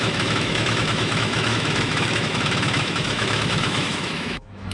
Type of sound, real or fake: fake